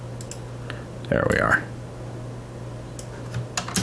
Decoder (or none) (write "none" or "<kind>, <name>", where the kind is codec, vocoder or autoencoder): none